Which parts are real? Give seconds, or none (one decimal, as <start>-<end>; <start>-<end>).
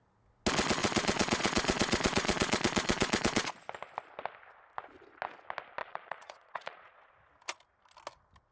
0.0-0.8; 3.5-5.8; 7.0-8.5